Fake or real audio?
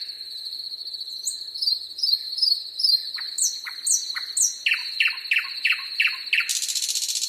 real